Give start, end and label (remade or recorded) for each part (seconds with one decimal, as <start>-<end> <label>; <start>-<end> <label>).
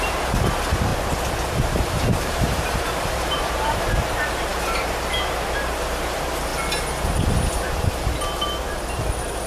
0.0-0.9 remade; 0.9-1.5 recorded; 1.5-6.5 remade; 6.5-8.7 recorded; 8.7-9.5 remade